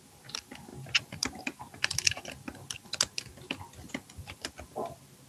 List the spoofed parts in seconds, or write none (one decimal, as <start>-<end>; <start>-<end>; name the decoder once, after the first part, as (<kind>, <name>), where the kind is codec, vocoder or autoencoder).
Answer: none